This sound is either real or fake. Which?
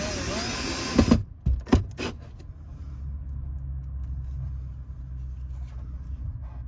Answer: real